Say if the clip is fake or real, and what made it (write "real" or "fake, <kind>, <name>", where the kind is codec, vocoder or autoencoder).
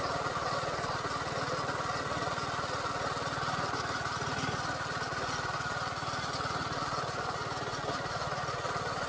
real